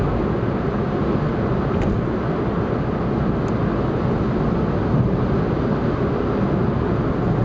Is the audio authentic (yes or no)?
yes